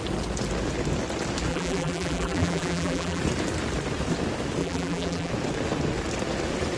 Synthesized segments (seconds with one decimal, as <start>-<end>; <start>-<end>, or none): 1.5-3.2; 4.6-5.3